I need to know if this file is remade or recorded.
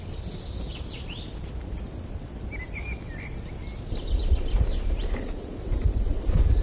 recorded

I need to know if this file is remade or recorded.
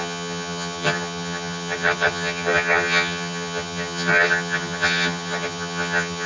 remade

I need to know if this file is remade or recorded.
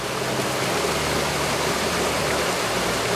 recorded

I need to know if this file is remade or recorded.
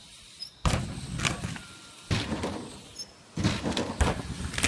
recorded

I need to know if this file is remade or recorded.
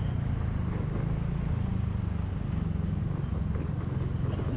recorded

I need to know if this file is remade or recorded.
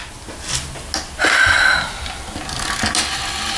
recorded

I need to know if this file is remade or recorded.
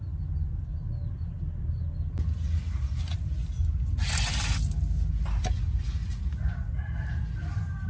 recorded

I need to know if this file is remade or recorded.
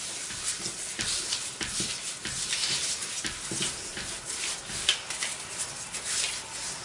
recorded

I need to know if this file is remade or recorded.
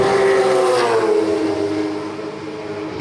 recorded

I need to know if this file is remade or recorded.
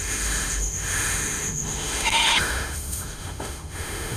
remade